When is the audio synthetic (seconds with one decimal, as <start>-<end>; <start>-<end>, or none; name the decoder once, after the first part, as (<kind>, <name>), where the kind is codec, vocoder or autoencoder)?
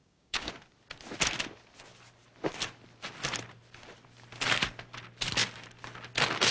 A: 0.0-0.5 (codec, DAC)